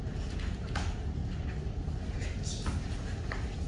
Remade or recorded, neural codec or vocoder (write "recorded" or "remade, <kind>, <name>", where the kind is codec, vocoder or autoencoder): recorded